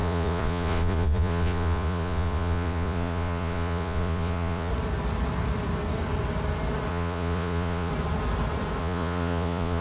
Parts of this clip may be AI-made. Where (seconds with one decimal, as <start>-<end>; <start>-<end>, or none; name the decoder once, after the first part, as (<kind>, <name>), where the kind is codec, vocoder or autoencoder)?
0.0-4.7 (vocoder, Vocos); 6.9-7.9; 8.8-9.8